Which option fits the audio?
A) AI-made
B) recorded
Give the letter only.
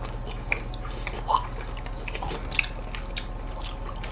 B